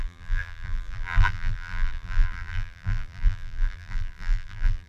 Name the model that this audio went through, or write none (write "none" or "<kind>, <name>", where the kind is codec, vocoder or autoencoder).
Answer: vocoder, BigVGAN v2